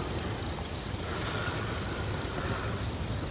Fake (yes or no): no